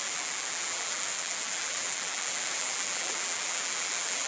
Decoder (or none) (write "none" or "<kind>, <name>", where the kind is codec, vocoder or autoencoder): vocoder, BigVGAN v2